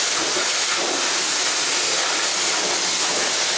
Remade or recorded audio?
recorded